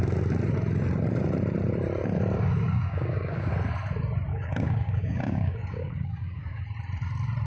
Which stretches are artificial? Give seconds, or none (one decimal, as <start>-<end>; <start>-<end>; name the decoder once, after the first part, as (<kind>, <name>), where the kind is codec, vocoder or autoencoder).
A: 2.6-3.5 (codec, DAC); 4.3-6.6